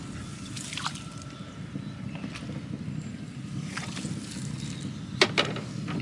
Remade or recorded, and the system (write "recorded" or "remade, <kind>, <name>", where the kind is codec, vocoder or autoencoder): recorded